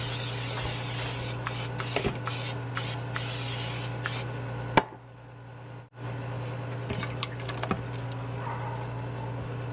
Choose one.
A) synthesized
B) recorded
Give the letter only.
B